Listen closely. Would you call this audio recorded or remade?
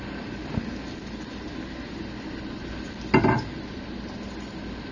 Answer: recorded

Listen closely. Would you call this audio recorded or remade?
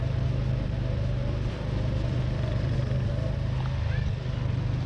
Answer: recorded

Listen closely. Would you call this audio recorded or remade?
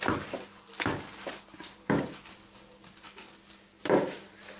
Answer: recorded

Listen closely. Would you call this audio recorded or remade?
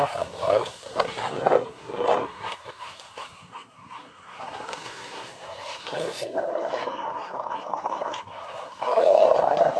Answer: remade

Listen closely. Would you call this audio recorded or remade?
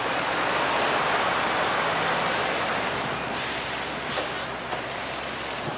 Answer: recorded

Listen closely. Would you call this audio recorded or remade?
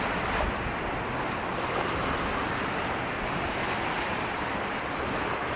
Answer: recorded